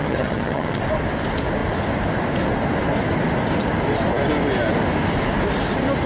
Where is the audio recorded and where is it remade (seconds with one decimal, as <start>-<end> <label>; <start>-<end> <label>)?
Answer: 0.0-0.8 remade; 0.8-6.1 recorded